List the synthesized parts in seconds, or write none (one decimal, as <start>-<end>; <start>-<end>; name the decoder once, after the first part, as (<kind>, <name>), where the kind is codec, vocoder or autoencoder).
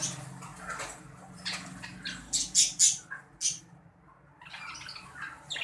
none